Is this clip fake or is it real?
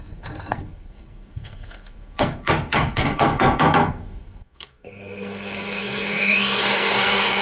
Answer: fake